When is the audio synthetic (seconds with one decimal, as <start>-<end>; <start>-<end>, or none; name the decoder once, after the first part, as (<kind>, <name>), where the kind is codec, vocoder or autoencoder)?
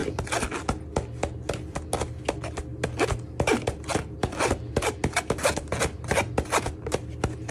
3.9-4.7 (vocoder, BigVGAN v2)